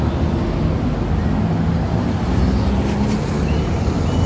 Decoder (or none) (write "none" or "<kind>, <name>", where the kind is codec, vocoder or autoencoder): none